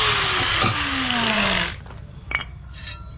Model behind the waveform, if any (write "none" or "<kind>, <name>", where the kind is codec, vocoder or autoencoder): none